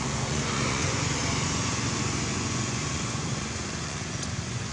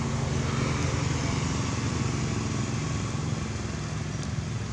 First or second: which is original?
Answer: second